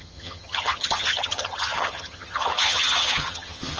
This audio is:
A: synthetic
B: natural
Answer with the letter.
A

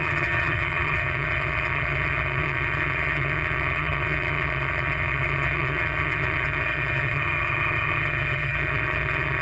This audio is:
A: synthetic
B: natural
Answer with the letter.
A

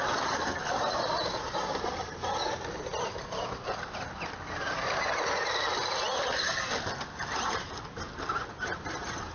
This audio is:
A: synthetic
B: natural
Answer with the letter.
B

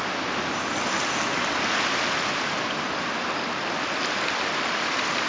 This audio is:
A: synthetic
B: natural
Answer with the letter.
B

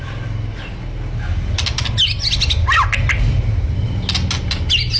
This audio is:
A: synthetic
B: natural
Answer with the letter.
B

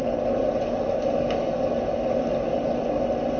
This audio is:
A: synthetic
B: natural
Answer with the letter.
B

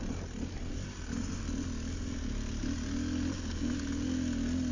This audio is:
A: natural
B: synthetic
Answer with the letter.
A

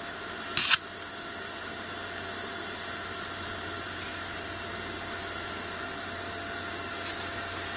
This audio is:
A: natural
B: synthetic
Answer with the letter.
A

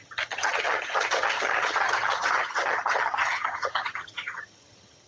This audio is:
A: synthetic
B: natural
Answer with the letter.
A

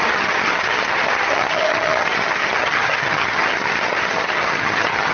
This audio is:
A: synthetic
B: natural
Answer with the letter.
A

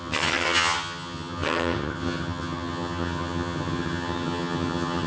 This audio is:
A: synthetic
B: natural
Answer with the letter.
A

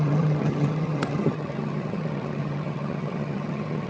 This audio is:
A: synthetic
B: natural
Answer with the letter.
A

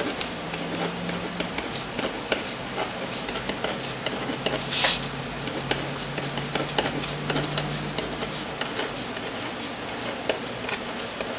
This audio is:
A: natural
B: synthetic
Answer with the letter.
A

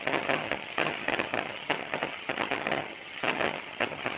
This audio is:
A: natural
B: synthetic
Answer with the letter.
B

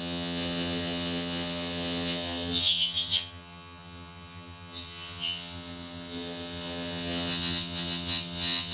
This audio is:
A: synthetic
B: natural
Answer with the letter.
A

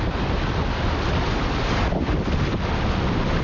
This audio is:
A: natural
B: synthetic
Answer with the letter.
A